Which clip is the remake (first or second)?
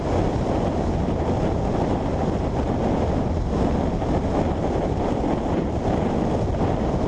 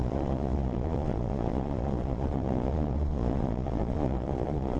second